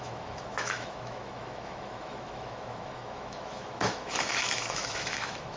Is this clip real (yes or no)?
no